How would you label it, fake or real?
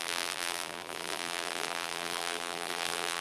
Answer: fake